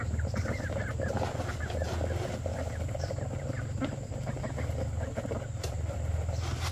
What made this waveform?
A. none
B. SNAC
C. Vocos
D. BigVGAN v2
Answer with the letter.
A